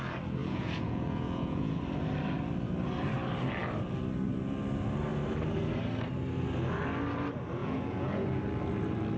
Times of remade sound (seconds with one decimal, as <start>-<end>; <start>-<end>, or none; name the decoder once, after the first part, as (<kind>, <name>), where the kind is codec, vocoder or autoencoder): 0.4-1.8 (vocoder, Vocos); 7.6-8.4